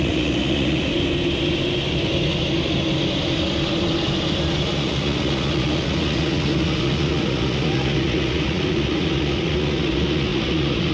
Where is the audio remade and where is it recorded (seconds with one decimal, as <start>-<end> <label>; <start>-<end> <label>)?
0.0-0.9 remade; 0.9-4.6 recorded; 4.6-10.9 remade